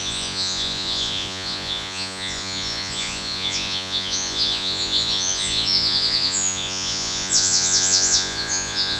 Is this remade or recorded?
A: remade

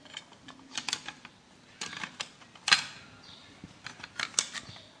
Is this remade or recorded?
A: recorded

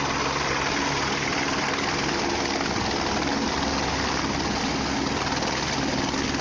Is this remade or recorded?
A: recorded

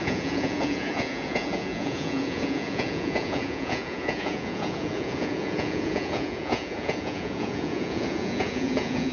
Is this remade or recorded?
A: remade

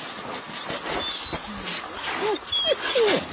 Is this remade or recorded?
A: recorded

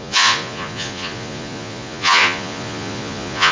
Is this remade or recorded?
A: remade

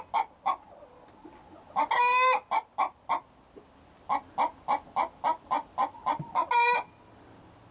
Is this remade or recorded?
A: recorded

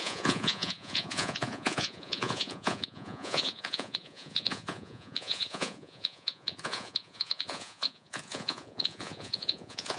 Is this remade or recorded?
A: remade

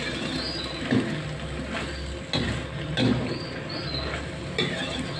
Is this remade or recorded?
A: recorded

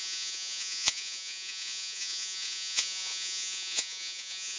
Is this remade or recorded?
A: remade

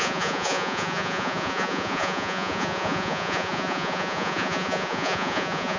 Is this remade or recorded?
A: remade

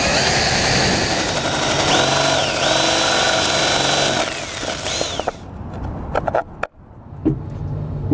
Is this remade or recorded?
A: recorded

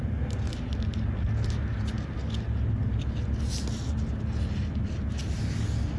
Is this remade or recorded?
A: recorded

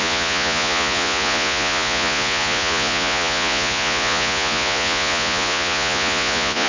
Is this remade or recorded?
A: remade